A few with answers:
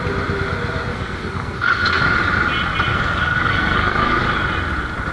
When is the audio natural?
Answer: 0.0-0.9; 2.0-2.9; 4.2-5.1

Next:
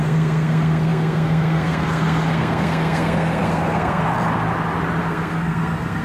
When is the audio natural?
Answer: 4.0-5.0

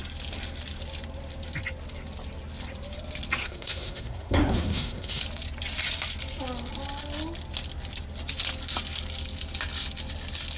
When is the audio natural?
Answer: 0.0-3.4; 5.2-10.6

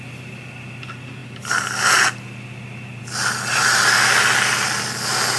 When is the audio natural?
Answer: 0.0-5.4